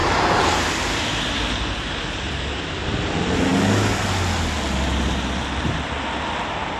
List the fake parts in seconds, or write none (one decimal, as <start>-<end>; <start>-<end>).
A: 0.7-3.5